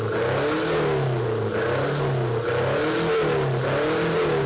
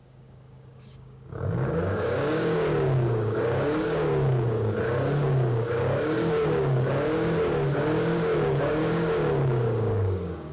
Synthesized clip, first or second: second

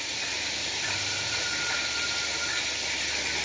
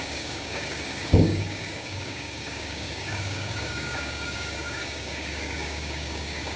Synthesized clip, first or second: second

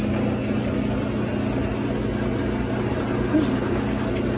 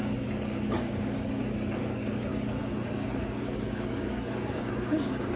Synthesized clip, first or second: second